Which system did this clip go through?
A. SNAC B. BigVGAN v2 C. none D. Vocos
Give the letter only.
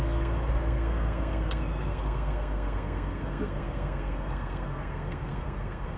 A